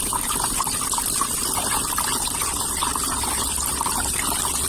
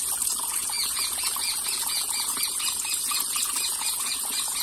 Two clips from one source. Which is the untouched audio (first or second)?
first